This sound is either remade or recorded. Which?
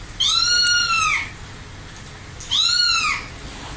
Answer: recorded